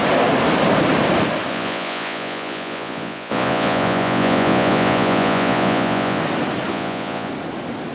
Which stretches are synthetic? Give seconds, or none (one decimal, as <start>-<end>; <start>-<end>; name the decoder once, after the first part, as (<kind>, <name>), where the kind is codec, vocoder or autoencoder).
1.5-6.2 (vocoder, Vocos); 6.7-7.3

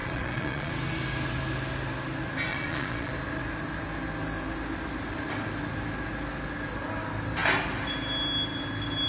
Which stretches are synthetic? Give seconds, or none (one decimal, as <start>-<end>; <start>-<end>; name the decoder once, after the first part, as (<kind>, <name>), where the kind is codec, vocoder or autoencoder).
0.0-0.7 (vocoder, Vocos); 2.5-3.1

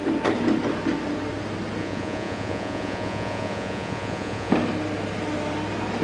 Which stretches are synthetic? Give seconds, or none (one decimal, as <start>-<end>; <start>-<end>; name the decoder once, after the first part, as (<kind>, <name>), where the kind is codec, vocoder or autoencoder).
1.8-4.5 (vocoder, Vocos)

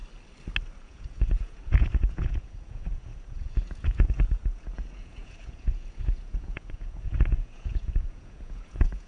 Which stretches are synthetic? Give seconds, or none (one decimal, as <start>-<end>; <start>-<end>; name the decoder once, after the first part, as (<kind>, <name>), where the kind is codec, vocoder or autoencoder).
0.8-9.1 (vocoder, Vocos)

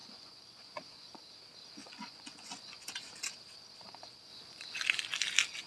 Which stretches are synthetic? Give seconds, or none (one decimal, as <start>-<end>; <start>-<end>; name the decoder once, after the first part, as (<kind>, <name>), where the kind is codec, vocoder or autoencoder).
0.0-1.2 (vocoder, Vocos); 1.8-3.1; 4.3-4.8

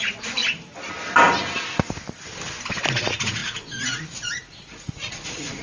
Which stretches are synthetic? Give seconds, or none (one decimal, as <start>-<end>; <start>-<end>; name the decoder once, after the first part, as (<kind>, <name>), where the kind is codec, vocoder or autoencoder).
0.0-0.4 (vocoder, Vocos); 2.9-5.6

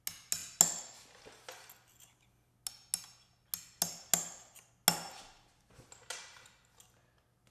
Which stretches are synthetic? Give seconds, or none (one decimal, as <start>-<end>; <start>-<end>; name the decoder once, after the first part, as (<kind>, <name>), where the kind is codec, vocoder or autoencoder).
none

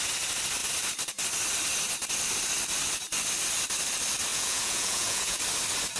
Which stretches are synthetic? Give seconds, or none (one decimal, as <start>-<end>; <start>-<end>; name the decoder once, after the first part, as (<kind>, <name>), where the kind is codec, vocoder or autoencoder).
4.3-5.4 (vocoder, Vocos)